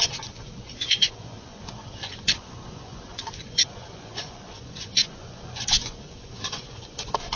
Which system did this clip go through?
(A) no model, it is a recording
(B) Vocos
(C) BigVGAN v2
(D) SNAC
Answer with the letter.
B